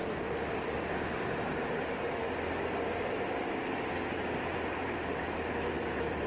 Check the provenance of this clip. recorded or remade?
remade